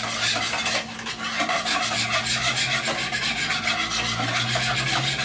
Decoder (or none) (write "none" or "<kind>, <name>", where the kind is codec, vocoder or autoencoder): none